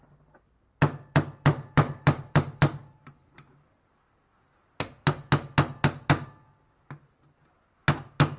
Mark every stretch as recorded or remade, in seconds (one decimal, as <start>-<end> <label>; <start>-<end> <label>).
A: 0.0-1.5 recorded; 1.5-3.9 remade; 3.9-8.4 recorded